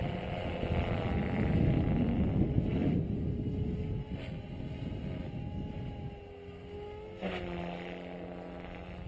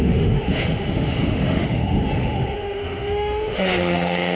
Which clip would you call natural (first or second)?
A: first